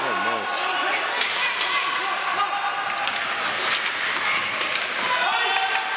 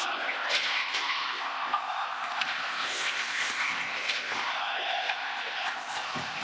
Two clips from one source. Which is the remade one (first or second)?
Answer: second